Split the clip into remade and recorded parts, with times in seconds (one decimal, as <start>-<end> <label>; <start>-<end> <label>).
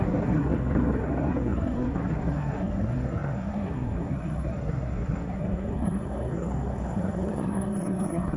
0.0-8.4 remade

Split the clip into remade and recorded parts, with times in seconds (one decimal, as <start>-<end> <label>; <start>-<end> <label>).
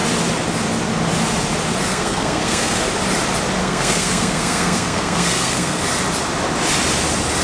0.0-1.9 recorded; 1.9-2.9 remade; 2.9-3.6 recorded; 3.6-5.8 remade; 5.8-7.4 recorded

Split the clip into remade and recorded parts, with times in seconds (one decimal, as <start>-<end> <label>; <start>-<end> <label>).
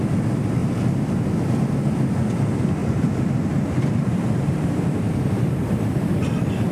0.0-2.8 recorded; 2.8-6.3 remade; 6.3-6.7 recorded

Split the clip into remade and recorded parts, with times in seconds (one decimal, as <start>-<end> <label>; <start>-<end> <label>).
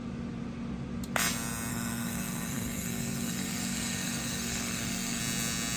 0.0-1.7 recorded; 1.7-5.2 remade; 5.2-5.8 recorded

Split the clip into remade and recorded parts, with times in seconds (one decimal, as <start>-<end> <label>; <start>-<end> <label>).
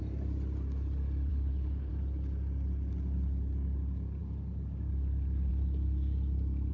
0.0-1.3 recorded; 1.3-1.9 remade; 1.9-6.7 recorded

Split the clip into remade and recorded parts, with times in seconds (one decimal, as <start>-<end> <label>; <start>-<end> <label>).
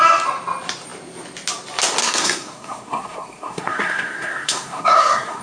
0.0-2.0 recorded; 2.0-5.4 remade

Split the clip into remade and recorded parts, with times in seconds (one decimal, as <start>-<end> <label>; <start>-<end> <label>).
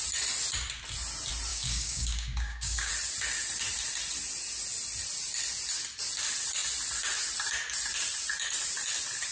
0.0-1.5 recorded; 1.5-2.9 remade; 2.9-9.3 recorded